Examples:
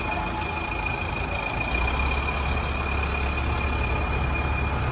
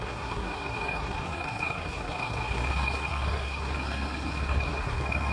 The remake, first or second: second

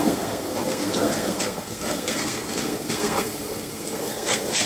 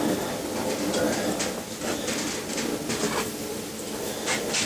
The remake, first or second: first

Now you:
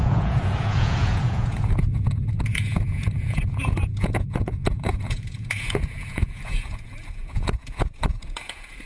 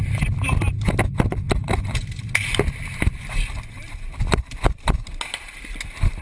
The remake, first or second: first